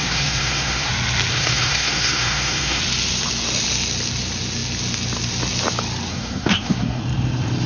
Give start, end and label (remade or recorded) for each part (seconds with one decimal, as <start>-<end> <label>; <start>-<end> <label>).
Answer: 0.0-0.9 remade; 0.9-1.3 recorded; 1.3-2.8 remade; 2.8-6.1 recorded; 6.1-7.0 remade; 7.0-7.7 recorded